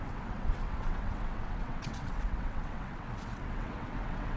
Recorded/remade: remade